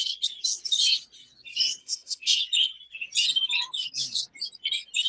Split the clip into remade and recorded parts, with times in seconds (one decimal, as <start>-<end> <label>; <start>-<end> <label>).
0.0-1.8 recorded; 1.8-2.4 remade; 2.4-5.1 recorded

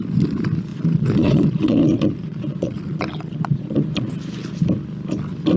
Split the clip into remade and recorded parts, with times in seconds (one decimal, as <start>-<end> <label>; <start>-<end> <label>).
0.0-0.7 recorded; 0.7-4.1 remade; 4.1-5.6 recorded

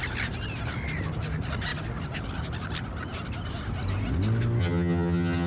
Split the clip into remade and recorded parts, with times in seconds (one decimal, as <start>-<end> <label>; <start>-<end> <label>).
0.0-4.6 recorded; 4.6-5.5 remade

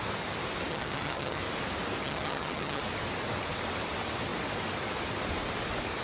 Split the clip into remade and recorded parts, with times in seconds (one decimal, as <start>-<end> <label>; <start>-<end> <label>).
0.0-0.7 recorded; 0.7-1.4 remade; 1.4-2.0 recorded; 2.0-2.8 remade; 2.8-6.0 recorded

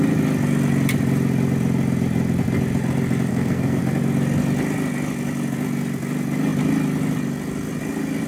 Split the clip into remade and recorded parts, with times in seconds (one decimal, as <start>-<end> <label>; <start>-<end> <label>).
0.0-3.3 recorded; 3.3-3.8 remade; 3.8-8.3 recorded